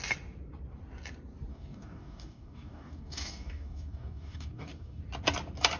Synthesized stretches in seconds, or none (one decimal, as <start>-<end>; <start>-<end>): 1.5-5.0